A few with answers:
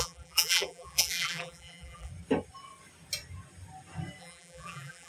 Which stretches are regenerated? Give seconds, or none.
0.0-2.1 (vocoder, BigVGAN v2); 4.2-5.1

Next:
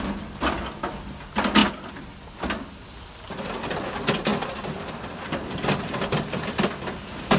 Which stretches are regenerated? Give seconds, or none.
none